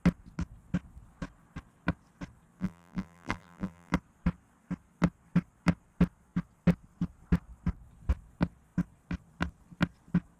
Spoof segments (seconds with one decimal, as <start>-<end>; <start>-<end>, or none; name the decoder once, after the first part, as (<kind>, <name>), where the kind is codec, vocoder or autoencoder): 2.6-3.9 (vocoder, BigVGAN v2)